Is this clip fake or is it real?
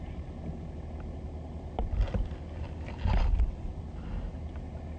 real